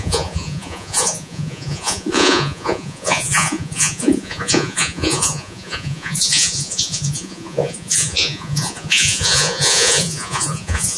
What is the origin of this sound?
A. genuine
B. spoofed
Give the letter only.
B